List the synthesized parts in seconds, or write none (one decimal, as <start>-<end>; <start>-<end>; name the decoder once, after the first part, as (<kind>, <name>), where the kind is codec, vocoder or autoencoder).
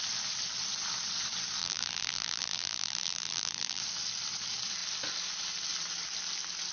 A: 1.6-3.8 (vocoder, BigVGAN v2)